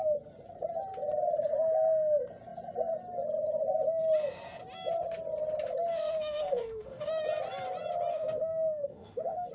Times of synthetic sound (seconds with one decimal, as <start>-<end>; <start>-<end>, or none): 5.9-7.1; 8.1-9.5